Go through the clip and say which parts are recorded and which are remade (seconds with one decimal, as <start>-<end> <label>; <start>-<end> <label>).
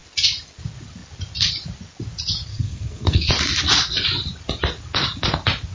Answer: 0.0-2.5 recorded; 2.5-3.3 remade; 3.3-5.7 recorded